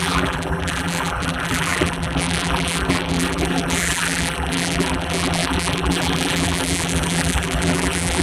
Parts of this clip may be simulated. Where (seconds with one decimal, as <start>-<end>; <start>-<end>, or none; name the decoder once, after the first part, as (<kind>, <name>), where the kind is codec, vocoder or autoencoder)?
0.0-8.2 (vocoder, BigVGAN v2)